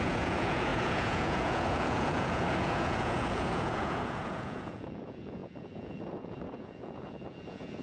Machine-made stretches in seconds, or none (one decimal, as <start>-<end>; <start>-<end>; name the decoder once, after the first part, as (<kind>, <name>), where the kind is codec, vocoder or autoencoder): 0.0-7.8 (vocoder, Vocos)